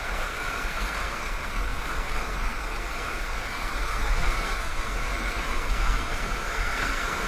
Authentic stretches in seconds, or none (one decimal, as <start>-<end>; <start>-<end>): none